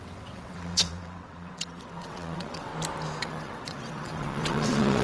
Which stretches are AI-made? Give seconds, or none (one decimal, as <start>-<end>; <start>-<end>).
0.0-2.7; 3.2-5.0